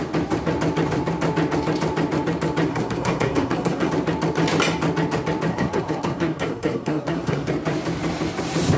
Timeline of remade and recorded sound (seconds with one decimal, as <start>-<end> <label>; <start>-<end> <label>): 0.0-2.7 recorded; 2.7-3.9 remade; 3.9-5.5 recorded; 5.5-7.5 remade; 7.5-8.8 recorded